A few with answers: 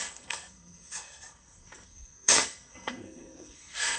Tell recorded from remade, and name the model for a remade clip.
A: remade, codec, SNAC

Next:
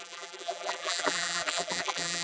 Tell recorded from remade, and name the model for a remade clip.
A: remade, vocoder, BigVGAN v2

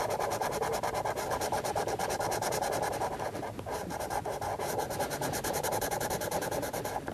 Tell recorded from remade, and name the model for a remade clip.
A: remade, vocoder, BigVGAN v2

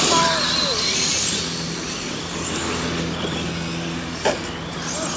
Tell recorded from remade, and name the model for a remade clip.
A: recorded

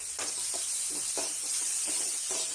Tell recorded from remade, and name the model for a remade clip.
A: recorded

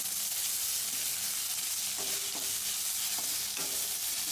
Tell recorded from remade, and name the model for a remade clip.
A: recorded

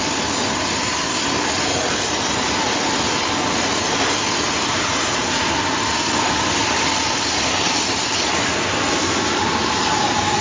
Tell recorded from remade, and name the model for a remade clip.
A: recorded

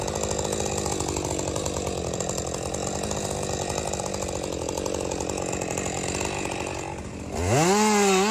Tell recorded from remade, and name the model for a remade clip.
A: recorded